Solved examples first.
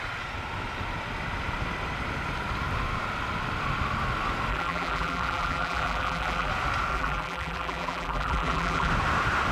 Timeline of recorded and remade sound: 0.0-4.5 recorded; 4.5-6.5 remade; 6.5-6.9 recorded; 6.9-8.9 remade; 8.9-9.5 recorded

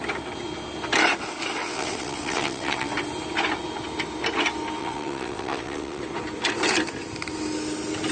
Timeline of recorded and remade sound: 0.0-1.6 recorded; 1.6-2.9 remade; 2.9-4.8 recorded; 4.8-6.0 remade; 6.0-8.1 recorded

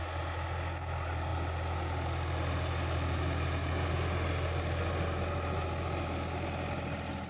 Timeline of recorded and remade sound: 0.0-7.3 recorded

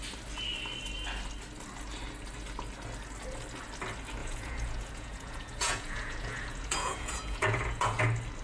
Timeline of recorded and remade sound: 0.0-4.2 recorded; 4.2-8.0 remade; 8.0-8.4 recorded

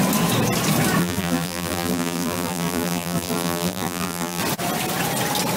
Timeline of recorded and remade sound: 0.0-1.0 recorded; 1.0-4.4 remade; 4.4-5.6 recorded

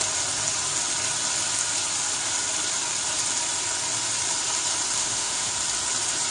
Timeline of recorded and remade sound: 0.0-5.0 recorded; 5.0-5.5 remade; 5.5-6.3 recorded